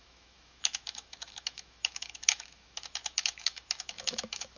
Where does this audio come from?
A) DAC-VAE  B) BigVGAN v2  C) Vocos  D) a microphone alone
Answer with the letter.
A